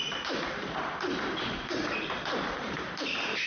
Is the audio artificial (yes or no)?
yes